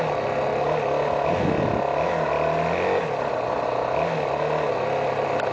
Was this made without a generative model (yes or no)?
yes